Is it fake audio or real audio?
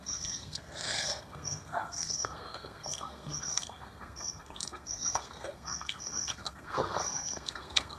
fake